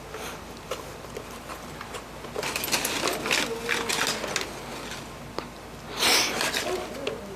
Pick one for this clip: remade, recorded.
recorded